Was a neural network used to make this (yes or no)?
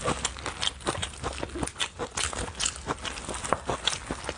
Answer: no